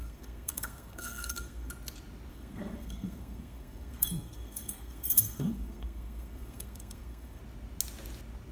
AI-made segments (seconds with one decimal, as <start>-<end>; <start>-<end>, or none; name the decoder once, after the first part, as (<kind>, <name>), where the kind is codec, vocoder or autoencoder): 0.0-1.7 (codec, SNAC); 2.3-7.4